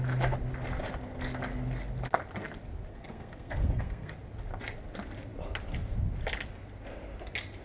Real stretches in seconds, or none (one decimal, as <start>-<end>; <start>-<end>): 0.0-2.9; 4.1-7.6

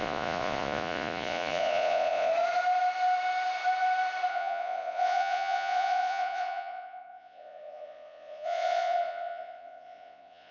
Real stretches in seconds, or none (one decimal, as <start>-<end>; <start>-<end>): 2.3-4.3

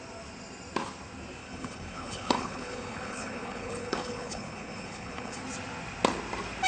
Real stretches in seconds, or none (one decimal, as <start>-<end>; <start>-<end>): 0.0-1.4; 5.4-6.7

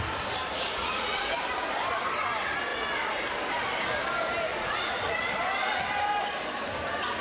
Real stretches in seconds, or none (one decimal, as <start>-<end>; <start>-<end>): 0.0-0.7; 1.2-4.5; 5.2-7.2